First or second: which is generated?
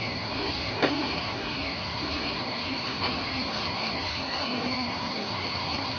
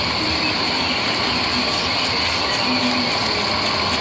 first